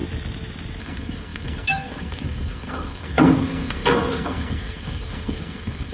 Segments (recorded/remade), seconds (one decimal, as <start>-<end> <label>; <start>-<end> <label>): 0.0-0.8 recorded; 0.8-5.9 remade